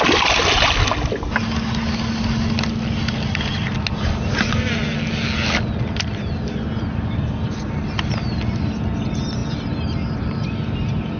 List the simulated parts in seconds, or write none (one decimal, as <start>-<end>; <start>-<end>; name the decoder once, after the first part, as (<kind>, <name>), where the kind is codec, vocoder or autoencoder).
none